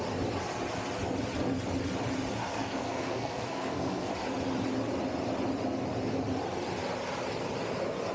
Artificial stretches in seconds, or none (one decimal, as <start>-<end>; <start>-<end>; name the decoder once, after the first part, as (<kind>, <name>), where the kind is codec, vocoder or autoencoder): 2.5-4.1 (codec, SNAC)